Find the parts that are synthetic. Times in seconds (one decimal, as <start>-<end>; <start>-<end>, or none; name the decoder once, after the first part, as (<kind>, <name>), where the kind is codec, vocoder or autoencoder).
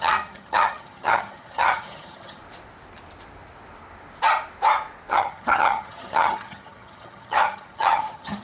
0.0-2.4 (vocoder, HiFi-GAN); 5.1-8.4